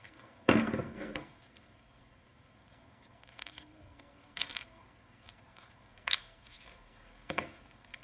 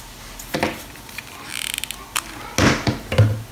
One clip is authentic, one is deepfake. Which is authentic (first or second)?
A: second